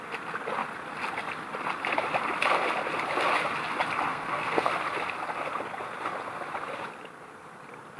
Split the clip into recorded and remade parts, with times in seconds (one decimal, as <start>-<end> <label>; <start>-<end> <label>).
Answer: 0.0-4.1 recorded; 4.1-4.7 remade; 4.7-8.0 recorded